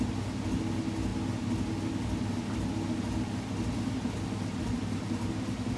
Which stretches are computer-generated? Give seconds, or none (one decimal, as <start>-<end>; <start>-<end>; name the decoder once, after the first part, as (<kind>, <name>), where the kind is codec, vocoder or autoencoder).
none